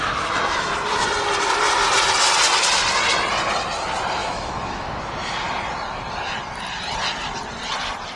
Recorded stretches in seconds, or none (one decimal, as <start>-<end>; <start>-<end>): 0.0-4.2; 5.0-8.2